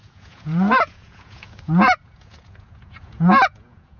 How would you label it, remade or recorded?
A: remade